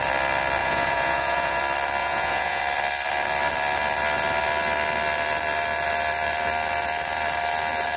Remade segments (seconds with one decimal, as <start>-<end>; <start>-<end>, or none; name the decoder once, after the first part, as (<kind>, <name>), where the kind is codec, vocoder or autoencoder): 0.6-1.6 (vocoder, Vocos); 2.0-2.6